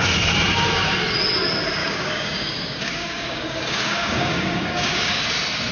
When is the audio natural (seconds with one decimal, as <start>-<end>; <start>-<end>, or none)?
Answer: 0.0-1.8; 5.2-5.7